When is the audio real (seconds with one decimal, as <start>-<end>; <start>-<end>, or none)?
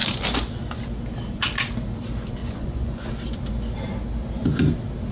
0.0-2.4; 3.1-5.1